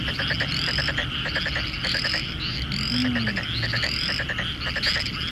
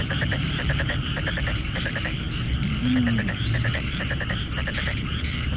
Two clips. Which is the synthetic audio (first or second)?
second